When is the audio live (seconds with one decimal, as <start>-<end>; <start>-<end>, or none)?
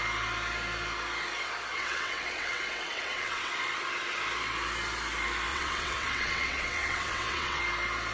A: 0.0-1.7; 3.5-5.5; 7.6-8.1